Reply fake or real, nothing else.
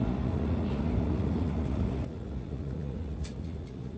fake